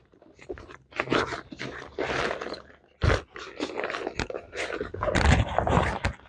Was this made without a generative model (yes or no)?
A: yes